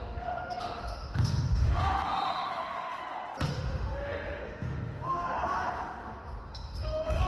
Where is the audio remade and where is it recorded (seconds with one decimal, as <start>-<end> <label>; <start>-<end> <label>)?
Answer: 0.0-3.0 remade; 3.0-3.5 recorded; 3.5-7.3 remade